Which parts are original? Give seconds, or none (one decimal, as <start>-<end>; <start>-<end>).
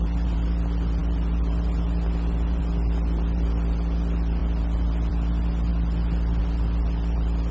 0.0-7.5